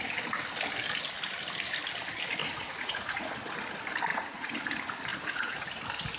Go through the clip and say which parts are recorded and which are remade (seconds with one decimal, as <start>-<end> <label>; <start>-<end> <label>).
0.0-2.4 recorded; 2.4-3.3 remade; 3.3-4.1 recorded; 4.1-4.6 remade; 4.6-5.1 recorded; 5.1-5.6 remade; 5.6-6.2 recorded